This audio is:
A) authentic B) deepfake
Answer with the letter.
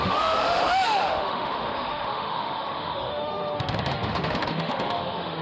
B